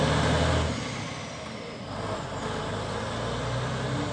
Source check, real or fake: real